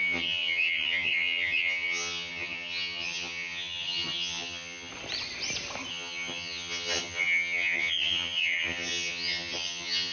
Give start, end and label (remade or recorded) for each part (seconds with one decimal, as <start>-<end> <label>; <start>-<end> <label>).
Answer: 0.0-4.9 remade; 4.9-5.9 recorded; 5.9-10.1 remade